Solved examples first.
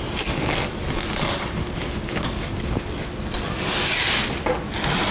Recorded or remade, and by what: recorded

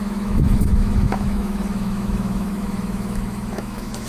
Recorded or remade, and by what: remade, autoencoder, DAC-VAE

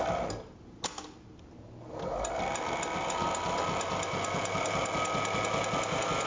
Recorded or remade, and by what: recorded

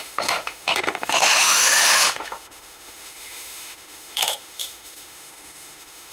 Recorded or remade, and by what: remade, autoencoder, DAC-VAE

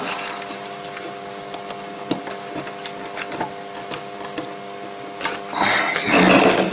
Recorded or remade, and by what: recorded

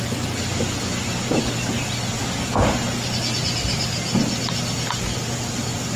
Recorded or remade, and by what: recorded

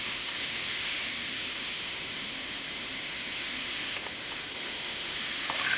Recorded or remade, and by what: remade, autoencoder, DAC-VAE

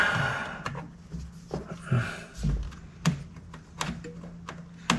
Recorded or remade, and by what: recorded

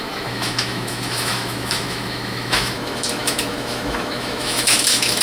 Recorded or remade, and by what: remade, autoencoder, DAC-VAE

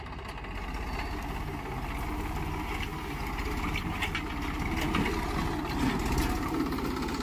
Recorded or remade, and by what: recorded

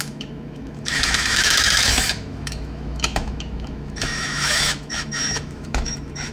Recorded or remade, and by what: remade, autoencoder, DAC-VAE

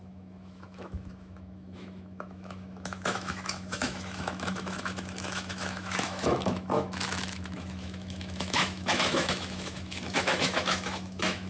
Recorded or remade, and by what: remade, autoencoder, DAC-VAE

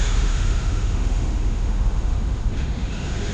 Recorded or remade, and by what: remade, autoencoder, DAC-VAE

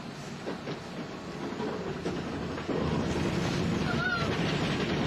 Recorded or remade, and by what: recorded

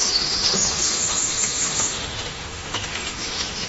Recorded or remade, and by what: remade, autoencoder, DAC-VAE